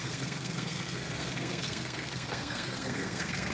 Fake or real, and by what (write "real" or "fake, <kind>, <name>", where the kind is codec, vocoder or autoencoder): fake, codec, SNAC